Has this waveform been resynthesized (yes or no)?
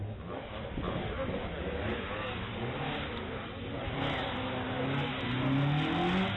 no